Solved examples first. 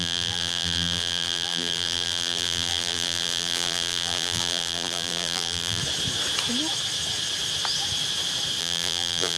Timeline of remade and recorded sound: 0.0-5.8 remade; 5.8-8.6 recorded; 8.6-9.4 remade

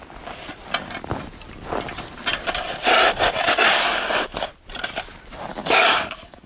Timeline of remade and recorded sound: 0.0-5.5 recorded; 5.5-6.5 remade

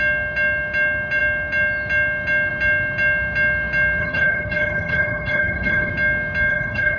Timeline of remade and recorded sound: 0.0-4.0 recorded; 4.0-5.9 remade; 5.9-6.5 recorded; 6.5-7.0 remade

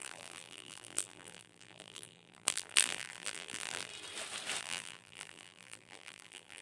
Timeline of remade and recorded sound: 0.0-3.9 remade; 3.9-4.6 recorded; 4.6-6.6 remade